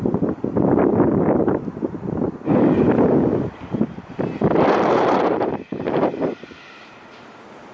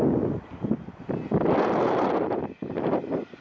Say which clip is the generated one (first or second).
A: first